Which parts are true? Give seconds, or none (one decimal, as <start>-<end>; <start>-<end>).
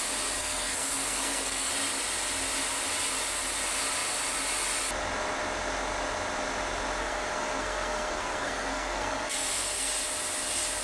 0.0-0.4; 1.7-7.0; 9.9-10.8